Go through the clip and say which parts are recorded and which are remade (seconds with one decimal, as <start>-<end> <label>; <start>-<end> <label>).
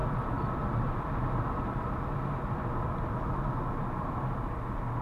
0.0-5.0 recorded